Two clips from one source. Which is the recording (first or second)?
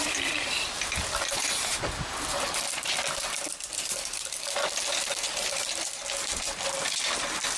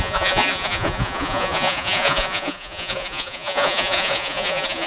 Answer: first